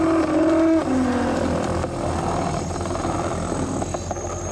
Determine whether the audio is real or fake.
real